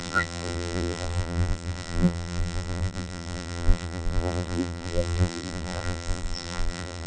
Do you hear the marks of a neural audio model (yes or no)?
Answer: yes